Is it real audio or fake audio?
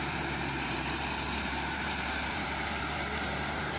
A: fake